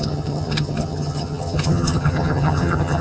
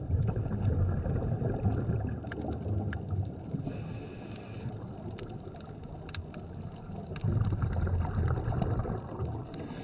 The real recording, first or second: second